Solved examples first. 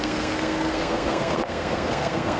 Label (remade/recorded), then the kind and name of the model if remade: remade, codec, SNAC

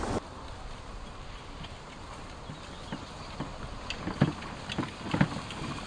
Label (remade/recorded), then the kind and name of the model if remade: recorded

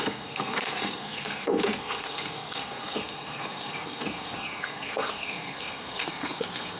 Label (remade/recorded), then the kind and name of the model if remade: remade, codec, SNAC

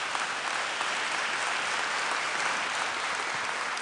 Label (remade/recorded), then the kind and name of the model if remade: recorded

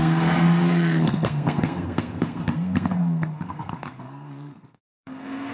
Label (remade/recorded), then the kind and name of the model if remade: remade, codec, SNAC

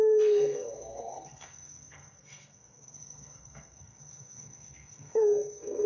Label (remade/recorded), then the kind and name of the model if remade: remade, codec, SNAC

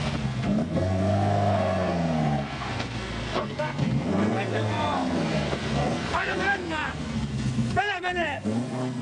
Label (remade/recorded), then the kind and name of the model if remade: remade, codec, SNAC